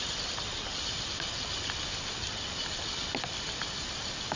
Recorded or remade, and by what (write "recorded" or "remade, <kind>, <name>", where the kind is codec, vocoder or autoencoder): remade, vocoder, BigVGAN v2